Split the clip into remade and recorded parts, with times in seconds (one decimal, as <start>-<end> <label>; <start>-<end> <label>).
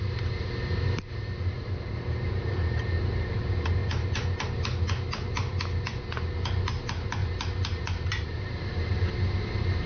0.0-3.8 remade; 3.8-6.8 recorded; 6.8-7.2 remade; 7.2-8.2 recorded; 8.2-9.9 remade